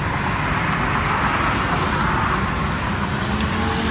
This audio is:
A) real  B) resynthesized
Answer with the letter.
A